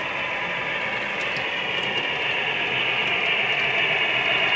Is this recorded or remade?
recorded